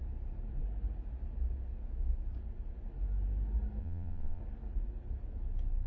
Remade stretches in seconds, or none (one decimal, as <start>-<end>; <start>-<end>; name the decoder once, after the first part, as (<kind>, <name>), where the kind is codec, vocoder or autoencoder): 3.8-4.4 (vocoder, Vocos)

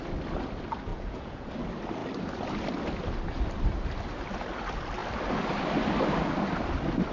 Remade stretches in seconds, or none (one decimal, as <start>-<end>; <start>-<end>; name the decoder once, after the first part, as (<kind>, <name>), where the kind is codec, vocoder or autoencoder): 0.9-1.5 (vocoder, Vocos)

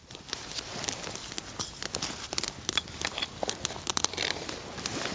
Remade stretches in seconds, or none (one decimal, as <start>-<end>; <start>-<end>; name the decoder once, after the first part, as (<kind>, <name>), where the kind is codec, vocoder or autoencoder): none

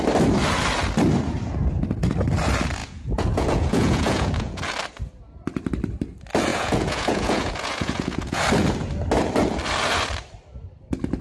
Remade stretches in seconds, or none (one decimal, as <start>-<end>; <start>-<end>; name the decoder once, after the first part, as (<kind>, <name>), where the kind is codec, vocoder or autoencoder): 2.8-4.6 (vocoder, Vocos); 6.5-8.4